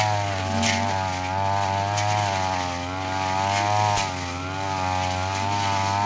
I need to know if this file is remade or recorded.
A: recorded